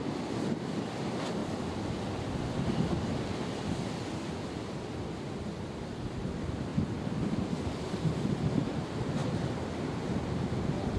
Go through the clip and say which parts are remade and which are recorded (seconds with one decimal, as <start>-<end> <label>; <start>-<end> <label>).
0.0-1.4 remade; 1.4-2.2 recorded; 2.2-6.7 remade; 6.7-7.5 recorded; 7.5-9.2 remade; 9.2-9.8 recorded; 9.8-11.0 remade